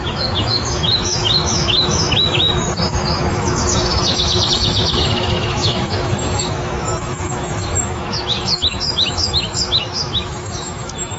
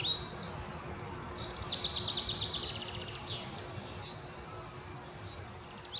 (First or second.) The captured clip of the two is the second